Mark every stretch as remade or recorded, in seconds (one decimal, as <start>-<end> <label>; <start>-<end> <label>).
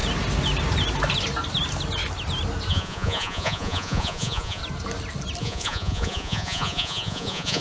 0.0-2.7 recorded; 2.7-4.6 remade; 4.6-5.4 recorded; 5.4-7.6 remade